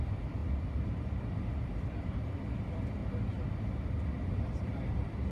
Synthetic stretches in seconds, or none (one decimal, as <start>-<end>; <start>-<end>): 0.0-3.0; 4.6-5.3